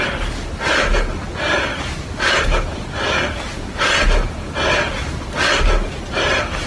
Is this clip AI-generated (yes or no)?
no